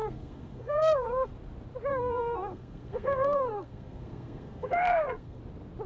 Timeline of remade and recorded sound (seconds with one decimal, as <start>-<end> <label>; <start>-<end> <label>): 0.0-1.3 remade; 1.3-1.9 recorded; 1.9-5.4 remade; 5.4-5.9 recorded